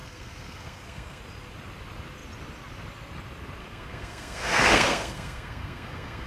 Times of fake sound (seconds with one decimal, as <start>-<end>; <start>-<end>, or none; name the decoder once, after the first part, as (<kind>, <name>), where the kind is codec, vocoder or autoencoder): 0.0-1.2 (codec, SNAC); 3.6-6.3